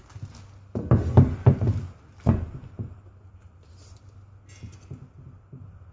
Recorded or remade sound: recorded